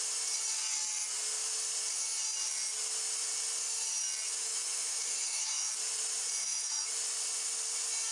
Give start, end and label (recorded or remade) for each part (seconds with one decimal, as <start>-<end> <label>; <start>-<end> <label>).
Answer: 0.0-4.3 recorded; 4.3-5.7 remade; 5.7-6.4 recorded; 6.4-6.9 remade; 6.9-8.1 recorded